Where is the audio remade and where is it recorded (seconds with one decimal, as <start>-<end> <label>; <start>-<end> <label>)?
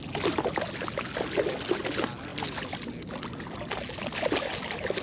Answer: 0.0-5.0 recorded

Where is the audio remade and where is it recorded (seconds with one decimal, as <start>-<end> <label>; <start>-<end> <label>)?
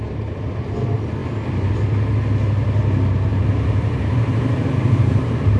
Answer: 0.0-3.3 recorded; 3.3-5.6 remade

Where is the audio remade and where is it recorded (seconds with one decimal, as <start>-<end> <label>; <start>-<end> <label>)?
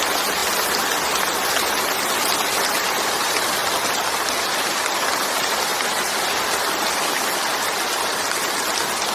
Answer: 0.0-9.1 recorded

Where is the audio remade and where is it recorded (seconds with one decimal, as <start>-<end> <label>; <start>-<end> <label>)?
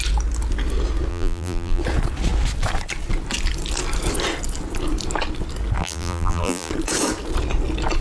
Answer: 0.0-1.1 recorded; 1.1-1.8 remade; 1.8-5.8 recorded; 5.8-6.7 remade; 6.7-8.0 recorded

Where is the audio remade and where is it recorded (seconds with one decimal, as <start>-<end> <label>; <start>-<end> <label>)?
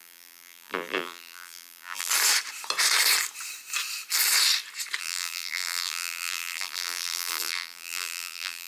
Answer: 0.0-2.1 remade; 2.1-5.0 recorded; 5.0-8.7 remade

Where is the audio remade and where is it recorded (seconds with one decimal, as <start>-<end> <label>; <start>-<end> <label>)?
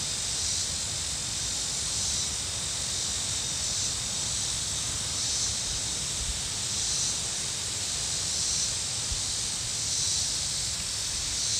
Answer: 0.0-11.6 recorded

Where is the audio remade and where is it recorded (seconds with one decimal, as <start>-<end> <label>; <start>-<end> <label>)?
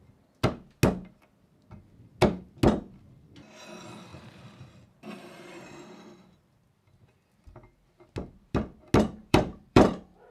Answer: 0.0-4.1 recorded; 4.1-6.0 remade; 6.0-9.2 recorded; 9.2-9.9 remade; 9.9-10.3 recorded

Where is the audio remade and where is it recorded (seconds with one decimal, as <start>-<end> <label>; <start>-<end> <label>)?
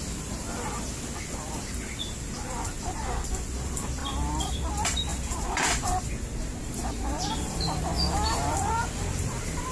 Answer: 0.0-4.0 remade; 4.0-4.5 recorded; 4.5-5.1 remade; 5.1-6.6 recorded; 6.6-7.9 remade; 7.9-8.5 recorded; 8.5-9.7 remade